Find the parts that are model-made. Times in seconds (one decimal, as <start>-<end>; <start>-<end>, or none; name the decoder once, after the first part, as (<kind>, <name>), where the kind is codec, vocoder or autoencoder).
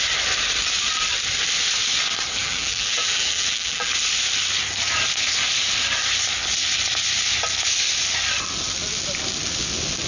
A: 2.4-3.9 (vocoder, BigVGAN v2)